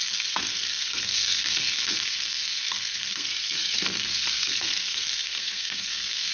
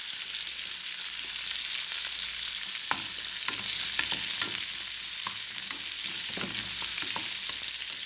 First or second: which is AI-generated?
first